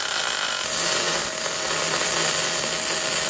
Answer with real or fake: real